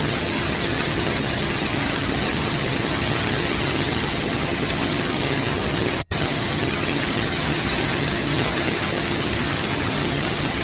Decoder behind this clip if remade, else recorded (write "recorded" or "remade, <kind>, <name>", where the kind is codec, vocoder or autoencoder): remade, vocoder, HiFi-GAN